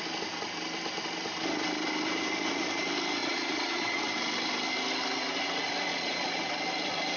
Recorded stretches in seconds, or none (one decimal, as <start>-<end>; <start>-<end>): 0.0-3.2; 4.0-5.9; 6.4-7.2